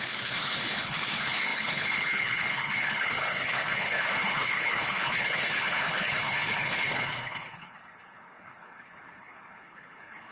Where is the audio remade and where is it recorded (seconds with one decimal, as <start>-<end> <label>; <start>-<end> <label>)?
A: 0.0-10.3 remade